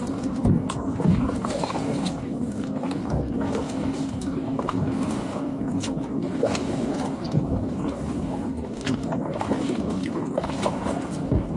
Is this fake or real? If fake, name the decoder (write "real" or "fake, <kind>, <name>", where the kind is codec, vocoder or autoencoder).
fake, codec, DAC